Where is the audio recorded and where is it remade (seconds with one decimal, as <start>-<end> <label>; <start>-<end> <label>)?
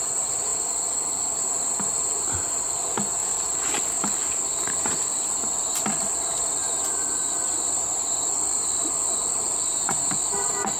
0.0-0.5 recorded; 0.5-1.2 remade; 1.2-3.2 recorded; 3.2-3.9 remade; 3.9-10.8 recorded